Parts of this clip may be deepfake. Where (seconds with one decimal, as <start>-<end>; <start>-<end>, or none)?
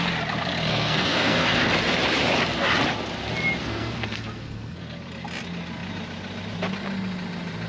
0.7-1.6; 3.6-4.8